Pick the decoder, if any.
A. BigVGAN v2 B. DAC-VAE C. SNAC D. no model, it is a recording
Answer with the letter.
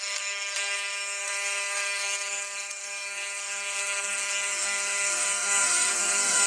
C